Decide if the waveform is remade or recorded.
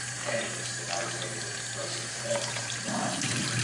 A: remade